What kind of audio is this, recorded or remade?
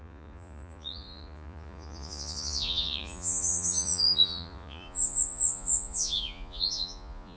remade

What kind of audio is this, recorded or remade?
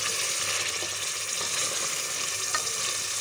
recorded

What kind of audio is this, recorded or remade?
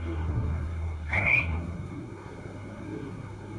remade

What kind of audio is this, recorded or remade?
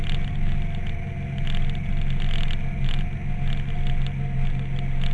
recorded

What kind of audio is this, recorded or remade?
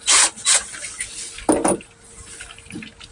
recorded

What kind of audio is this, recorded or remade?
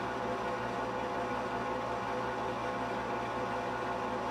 recorded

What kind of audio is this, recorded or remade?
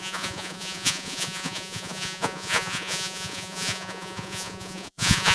remade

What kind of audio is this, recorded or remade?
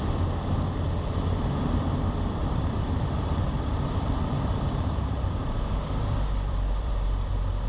remade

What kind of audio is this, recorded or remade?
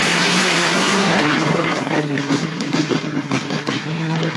remade